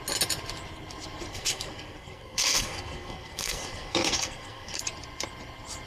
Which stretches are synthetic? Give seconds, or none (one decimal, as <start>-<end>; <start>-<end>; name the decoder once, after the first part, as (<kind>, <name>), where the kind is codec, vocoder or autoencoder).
1.3-4.8 (codec, SNAC)